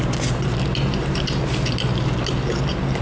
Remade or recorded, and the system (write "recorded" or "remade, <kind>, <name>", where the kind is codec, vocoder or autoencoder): recorded